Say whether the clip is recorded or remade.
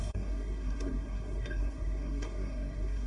remade